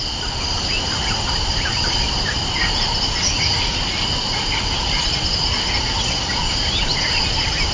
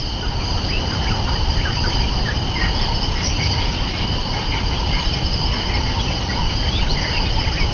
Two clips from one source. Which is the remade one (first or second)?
second